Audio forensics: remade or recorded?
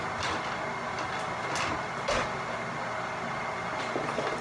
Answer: recorded